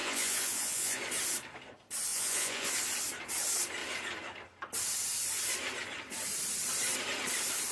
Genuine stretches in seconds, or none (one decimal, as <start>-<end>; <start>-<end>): 1.0-2.1; 2.7-7.7